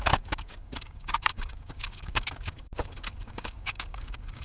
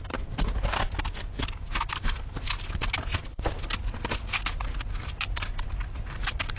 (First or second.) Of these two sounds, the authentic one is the second